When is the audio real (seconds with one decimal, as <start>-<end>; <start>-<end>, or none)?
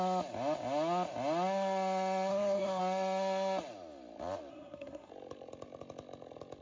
0.0-2.3; 2.8-4.5; 5.1-6.6